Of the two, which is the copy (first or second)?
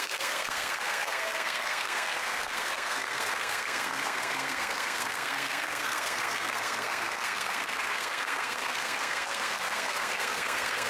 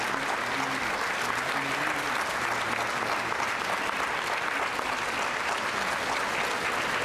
first